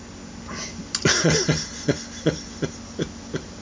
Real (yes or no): yes